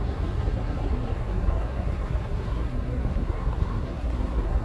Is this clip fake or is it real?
fake